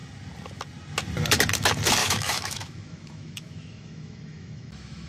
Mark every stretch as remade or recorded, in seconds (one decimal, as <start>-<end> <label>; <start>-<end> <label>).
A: 0.0-2.0 recorded; 2.0-5.1 remade